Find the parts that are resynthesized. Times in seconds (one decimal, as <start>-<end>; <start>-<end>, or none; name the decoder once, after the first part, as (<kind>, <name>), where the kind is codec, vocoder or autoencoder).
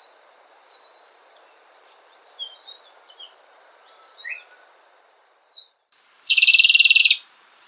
0.0-6.5 (vocoder, BigVGAN v2); 7.0-7.7